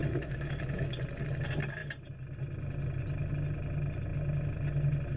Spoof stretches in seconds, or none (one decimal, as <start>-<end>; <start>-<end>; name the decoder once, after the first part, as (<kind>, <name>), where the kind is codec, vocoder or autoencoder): 0.0-0.9 (autoencoder, DAC-VAE)